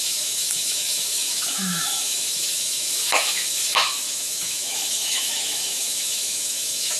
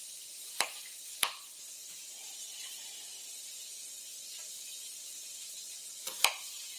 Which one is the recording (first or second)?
second